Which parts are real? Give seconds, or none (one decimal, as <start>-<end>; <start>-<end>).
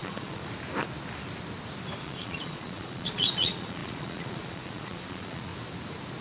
0.4-2.0; 5.5-6.2